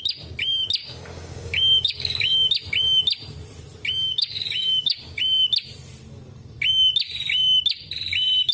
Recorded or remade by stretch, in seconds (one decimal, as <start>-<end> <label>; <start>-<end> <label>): 0.0-0.8 recorded; 0.8-2.5 remade; 2.5-4.0 recorded; 4.0-5.2 remade; 5.2-8.5 recorded